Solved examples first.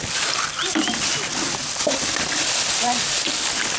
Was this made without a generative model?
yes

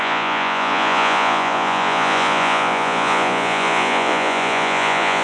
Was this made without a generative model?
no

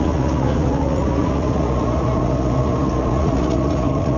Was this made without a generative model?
no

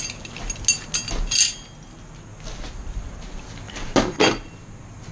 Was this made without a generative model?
yes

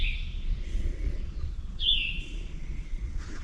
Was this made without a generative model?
no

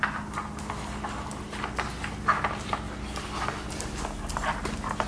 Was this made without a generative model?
yes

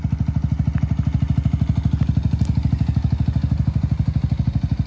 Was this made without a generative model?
yes